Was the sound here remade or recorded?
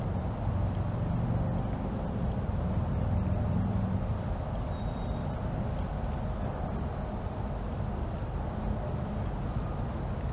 recorded